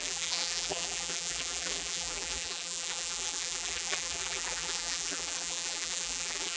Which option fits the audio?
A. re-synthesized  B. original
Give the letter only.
A